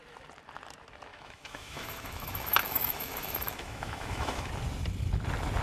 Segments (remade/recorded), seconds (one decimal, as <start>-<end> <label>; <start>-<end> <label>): 0.0-1.1 recorded; 1.1-4.5 remade; 4.5-5.6 recorded